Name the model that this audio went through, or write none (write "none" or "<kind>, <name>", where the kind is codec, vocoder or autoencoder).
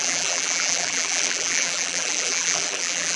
vocoder, BigVGAN v2